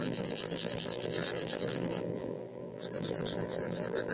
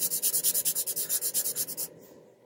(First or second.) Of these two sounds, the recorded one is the second